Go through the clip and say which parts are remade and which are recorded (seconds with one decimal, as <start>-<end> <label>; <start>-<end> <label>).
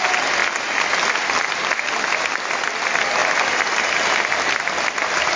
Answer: 0.0-5.4 recorded